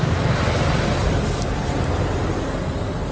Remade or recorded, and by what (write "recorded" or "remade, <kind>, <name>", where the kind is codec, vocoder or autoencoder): recorded